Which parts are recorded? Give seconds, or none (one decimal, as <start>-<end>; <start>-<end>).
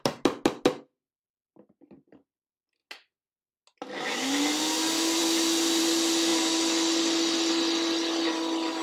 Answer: 0.0-8.8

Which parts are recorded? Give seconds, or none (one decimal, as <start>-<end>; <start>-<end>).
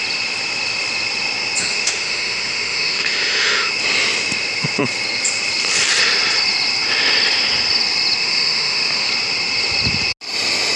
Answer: 0.0-1.6; 3.7-8.2; 9.1-10.8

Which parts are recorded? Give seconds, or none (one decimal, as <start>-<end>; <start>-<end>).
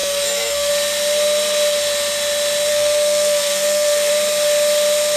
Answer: 0.7-2.7; 4.1-5.2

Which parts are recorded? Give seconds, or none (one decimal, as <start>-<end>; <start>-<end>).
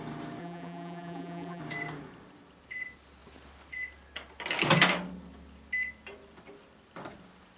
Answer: 0.0-0.4; 1.6-7.6